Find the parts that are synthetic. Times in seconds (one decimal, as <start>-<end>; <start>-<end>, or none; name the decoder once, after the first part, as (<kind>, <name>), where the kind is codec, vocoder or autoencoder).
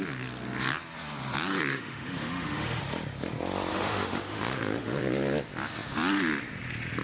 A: 1.7-2.8 (autoencoder, DAC-VAE); 3.7-5.0